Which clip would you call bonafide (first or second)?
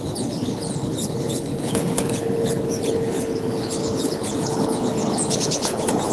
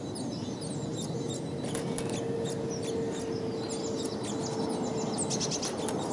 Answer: second